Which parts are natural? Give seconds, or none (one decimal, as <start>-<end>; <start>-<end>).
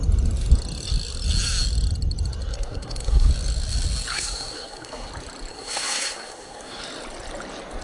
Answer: 0.0-2.5; 3.3-4.1; 5.1-5.5; 6.8-7.8